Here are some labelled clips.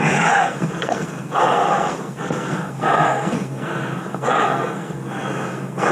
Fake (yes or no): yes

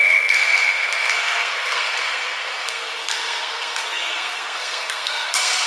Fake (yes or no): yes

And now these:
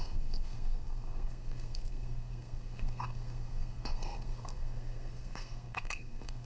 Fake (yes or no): yes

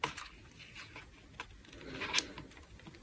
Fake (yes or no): no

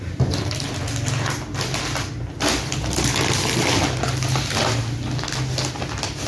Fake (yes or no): no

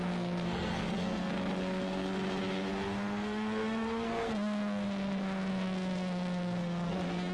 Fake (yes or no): yes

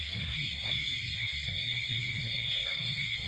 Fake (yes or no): yes